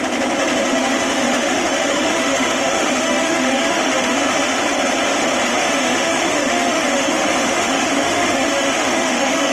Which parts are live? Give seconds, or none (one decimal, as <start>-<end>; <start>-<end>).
0.0-0.7; 4.6-5.5